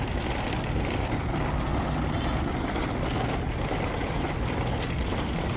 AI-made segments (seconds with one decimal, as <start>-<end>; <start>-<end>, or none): none